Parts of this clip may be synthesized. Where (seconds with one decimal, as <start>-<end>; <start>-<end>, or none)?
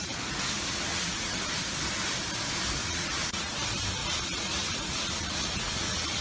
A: 0.9-1.4; 2.8-3.5; 4.0-6.2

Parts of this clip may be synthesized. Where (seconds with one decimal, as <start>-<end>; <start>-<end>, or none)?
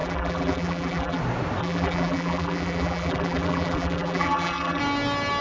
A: 0.0-1.2; 1.6-4.8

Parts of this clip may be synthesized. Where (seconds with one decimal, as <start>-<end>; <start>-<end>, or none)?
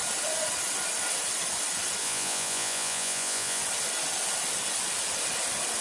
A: 2.0-3.6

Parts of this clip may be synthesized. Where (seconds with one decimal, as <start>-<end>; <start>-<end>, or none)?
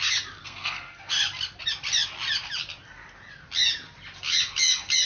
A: 0.4-1.1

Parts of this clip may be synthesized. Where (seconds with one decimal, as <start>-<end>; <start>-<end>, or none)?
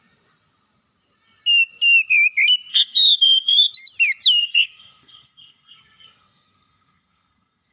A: 2.7-3.7; 4.4-7.7